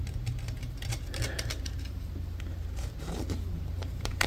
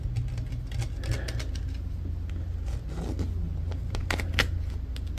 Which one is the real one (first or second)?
second